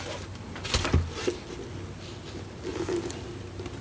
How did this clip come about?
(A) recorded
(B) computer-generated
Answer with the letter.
A